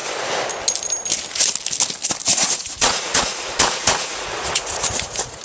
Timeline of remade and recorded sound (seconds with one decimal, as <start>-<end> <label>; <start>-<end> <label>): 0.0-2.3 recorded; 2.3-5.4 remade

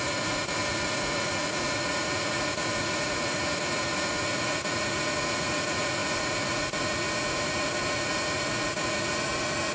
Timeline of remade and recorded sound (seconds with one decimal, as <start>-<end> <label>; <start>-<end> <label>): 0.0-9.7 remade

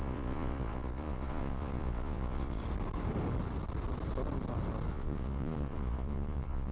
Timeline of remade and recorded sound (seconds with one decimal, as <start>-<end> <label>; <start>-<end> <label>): 0.0-2.6 remade; 2.6-4.9 recorded; 4.9-6.7 remade

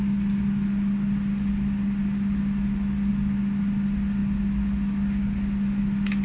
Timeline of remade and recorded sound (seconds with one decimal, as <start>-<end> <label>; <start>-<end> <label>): 0.0-6.2 recorded

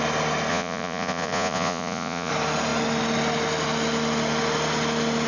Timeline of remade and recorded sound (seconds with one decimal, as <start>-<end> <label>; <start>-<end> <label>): 0.0-0.5 recorded; 0.5-2.3 remade; 2.3-5.3 recorded

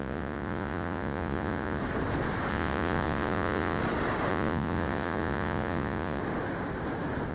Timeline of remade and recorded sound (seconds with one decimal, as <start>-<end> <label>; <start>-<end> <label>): 0.0-1.8 remade; 1.8-2.5 recorded; 2.5-3.8 remade; 3.8-4.3 recorded; 4.3-6.2 remade; 6.2-7.3 recorded

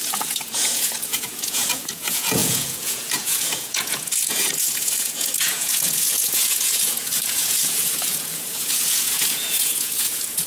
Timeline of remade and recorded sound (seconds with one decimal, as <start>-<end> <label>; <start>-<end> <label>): 0.0-10.5 remade